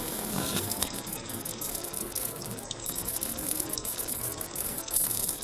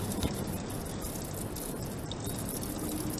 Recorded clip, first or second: second